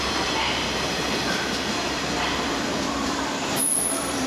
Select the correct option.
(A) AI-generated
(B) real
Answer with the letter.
A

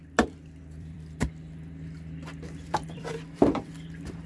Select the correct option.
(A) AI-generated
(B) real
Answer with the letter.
A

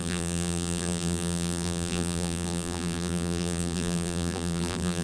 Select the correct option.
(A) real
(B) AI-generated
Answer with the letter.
B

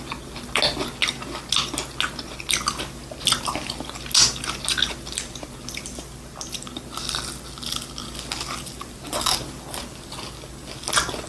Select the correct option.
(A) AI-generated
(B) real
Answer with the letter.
B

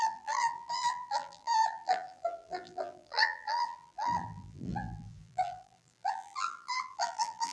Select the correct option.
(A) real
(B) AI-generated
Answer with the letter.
B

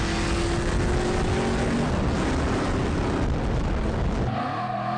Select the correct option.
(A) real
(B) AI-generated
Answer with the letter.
A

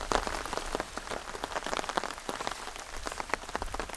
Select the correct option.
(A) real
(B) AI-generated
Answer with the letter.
A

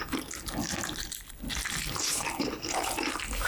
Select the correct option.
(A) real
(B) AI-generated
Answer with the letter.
A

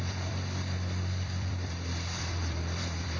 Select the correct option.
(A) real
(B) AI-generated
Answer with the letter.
B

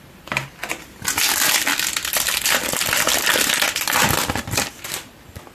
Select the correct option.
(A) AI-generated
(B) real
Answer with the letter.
B